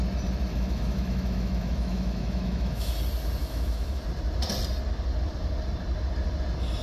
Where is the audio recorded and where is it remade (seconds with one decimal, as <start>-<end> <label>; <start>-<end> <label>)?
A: 0.0-0.5 recorded; 0.5-2.9 remade; 2.9-3.4 recorded; 3.4-4.0 remade; 4.0-6.8 recorded